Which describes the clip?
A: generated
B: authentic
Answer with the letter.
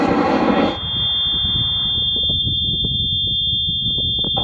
B